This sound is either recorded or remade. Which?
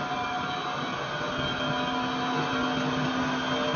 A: recorded